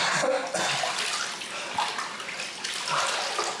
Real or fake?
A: real